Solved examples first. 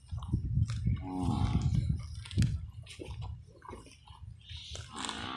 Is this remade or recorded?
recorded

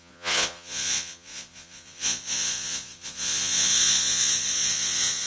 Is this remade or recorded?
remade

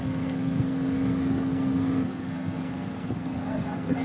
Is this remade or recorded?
remade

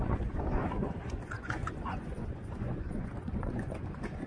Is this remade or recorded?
remade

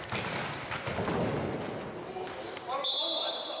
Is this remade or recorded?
recorded